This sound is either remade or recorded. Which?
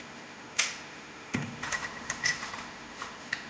remade